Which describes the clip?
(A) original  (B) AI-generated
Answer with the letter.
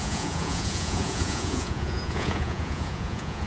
B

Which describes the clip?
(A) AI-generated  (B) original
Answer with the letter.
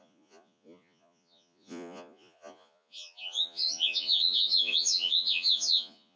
A